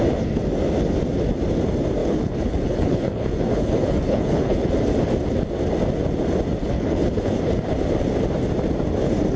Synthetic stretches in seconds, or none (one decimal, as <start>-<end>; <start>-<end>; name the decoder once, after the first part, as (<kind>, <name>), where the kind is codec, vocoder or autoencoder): 2.0-4.7 (codec, HILCodec); 6.6-7.4